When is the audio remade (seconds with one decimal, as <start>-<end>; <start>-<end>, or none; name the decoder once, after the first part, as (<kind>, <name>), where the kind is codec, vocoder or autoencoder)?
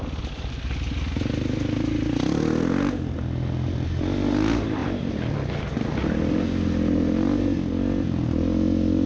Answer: none